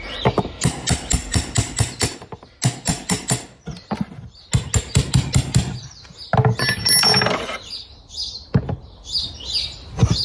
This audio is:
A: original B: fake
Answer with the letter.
A